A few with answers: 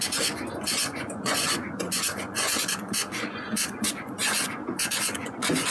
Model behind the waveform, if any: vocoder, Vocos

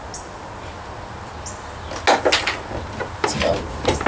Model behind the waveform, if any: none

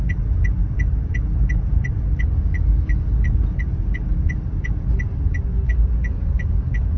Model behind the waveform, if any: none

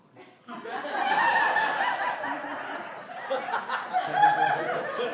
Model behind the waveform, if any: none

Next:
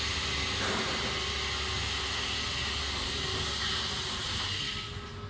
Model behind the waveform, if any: none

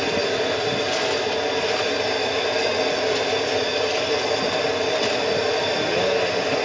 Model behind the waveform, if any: none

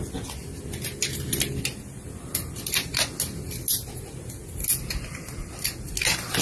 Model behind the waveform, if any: none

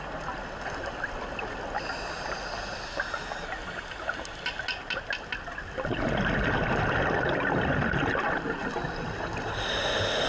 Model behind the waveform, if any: none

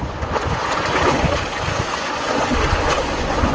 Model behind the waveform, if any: vocoder, Vocos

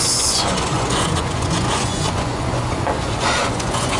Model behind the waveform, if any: vocoder, Vocos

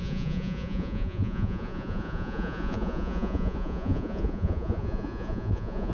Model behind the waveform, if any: vocoder, Vocos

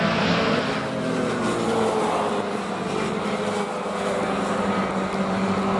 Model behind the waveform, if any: none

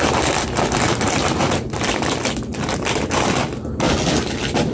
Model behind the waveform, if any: none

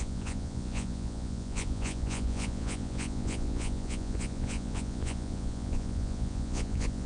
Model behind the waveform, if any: vocoder, Vocos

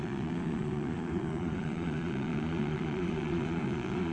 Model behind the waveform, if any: vocoder, Vocos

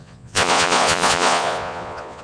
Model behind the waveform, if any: vocoder, Vocos